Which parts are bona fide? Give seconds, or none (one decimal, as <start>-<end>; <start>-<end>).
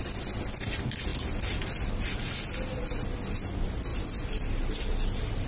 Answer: 0.0-3.9; 4.7-5.5